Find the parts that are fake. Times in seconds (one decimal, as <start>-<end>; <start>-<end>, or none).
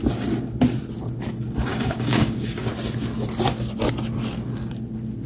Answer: 1.7-2.7